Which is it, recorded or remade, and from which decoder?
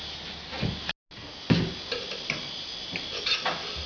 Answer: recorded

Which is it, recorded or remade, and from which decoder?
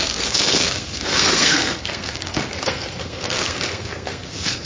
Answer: remade, codec, SNAC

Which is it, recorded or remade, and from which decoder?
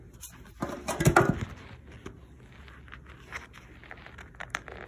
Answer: recorded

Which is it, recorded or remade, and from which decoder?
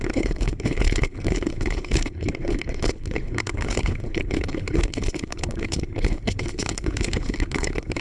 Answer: remade, codec, HILCodec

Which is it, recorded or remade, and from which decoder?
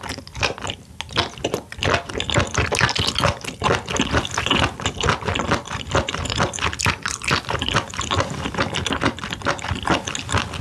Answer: recorded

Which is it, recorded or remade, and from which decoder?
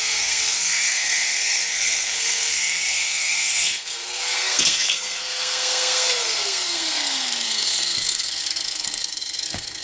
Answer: remade, codec, SNAC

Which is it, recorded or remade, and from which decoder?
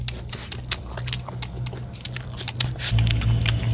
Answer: recorded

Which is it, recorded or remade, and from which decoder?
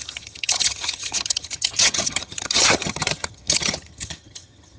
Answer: remade, vocoder, HiFi-GAN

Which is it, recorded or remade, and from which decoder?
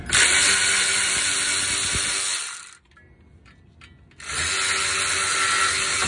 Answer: recorded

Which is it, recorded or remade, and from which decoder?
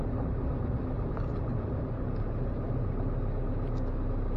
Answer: recorded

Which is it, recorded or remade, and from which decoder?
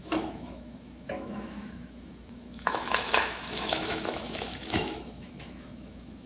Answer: remade, autoencoder, DAC-VAE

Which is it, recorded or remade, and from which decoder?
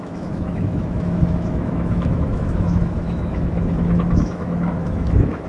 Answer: remade, autoencoder, DAC-VAE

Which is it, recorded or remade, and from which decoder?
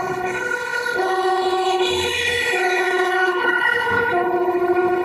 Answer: remade, codec, HILCodec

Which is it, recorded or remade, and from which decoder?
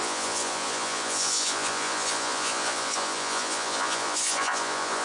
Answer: remade, vocoder, Vocos